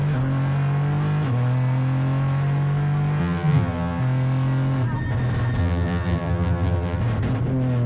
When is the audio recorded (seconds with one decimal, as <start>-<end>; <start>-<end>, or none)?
0.0-3.2; 4.0-5.6; 7.0-7.9